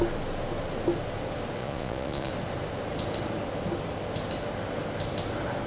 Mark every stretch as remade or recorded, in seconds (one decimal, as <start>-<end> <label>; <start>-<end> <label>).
0.0-1.6 recorded; 1.6-2.3 remade; 2.3-5.7 recorded